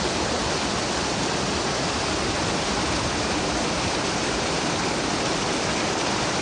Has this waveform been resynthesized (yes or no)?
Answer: no